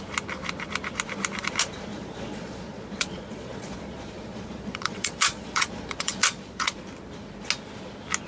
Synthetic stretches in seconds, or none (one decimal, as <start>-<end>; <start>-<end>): 1.9-6.8